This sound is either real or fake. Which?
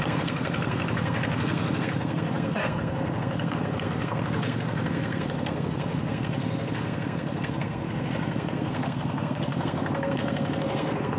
fake